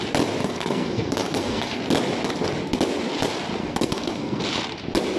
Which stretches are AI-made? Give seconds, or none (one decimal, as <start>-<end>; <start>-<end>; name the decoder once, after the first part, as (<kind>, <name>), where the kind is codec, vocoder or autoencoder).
0.4-1.8 (codec, SNAC); 3.6-4.4